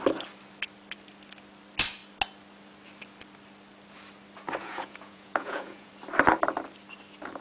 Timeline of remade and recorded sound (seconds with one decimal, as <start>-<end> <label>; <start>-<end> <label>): 0.0-4.6 recorded; 4.6-5.9 remade; 5.9-7.4 recorded

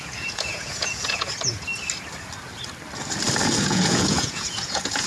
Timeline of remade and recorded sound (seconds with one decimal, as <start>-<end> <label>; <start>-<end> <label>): 0.0-1.7 remade; 1.7-3.6 recorded; 3.6-5.1 remade

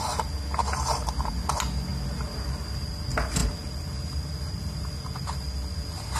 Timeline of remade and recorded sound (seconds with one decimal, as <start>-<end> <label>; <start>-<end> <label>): 0.0-6.2 recorded

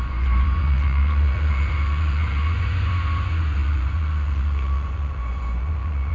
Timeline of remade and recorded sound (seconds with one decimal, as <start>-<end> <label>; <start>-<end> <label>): 0.0-6.1 remade